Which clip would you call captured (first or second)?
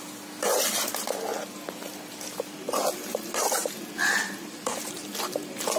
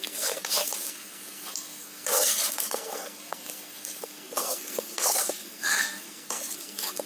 first